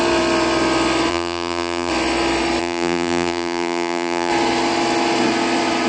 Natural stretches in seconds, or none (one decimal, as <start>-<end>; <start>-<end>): 0.0-1.1; 1.9-2.6; 4.3-5.9